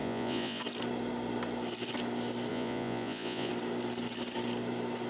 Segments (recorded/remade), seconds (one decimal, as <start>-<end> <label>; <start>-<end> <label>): 0.0-0.6 remade; 0.6-2.5 recorded; 2.5-3.5 remade; 3.5-5.1 recorded

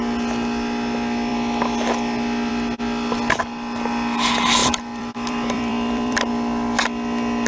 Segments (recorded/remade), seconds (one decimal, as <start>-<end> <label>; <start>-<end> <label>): 0.0-4.6 recorded; 4.6-6.3 remade; 6.3-7.5 recorded

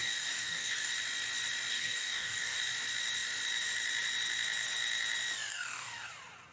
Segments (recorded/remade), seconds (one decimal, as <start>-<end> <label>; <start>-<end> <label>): 0.0-0.9 remade; 0.9-1.7 recorded; 1.7-2.6 remade; 2.6-5.5 recorded; 5.5-6.1 remade; 6.1-6.5 recorded

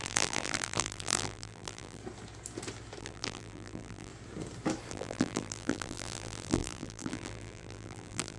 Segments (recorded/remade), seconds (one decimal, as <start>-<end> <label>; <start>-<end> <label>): 0.0-2.0 remade; 2.0-3.0 recorded; 3.0-4.1 remade; 4.1-4.9 recorded; 4.9-8.4 remade

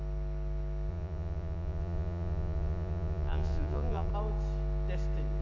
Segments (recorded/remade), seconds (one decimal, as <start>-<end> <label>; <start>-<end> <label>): 0.0-0.9 recorded; 0.9-4.1 remade; 4.1-5.4 recorded